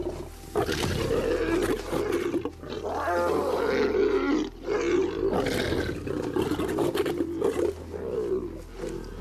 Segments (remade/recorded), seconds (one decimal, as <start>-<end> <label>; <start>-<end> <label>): 0.0-9.2 recorded